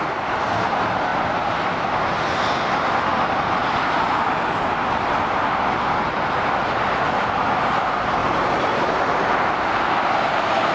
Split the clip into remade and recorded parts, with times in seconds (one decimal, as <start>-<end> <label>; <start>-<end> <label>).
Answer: 0.0-8.2 recorded; 8.2-9.0 remade; 9.0-10.7 recorded